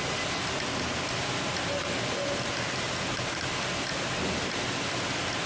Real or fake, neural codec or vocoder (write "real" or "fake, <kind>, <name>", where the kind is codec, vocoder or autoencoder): real